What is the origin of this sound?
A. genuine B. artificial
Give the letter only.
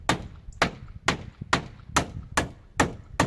A